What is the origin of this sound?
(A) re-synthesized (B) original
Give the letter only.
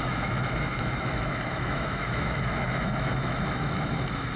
A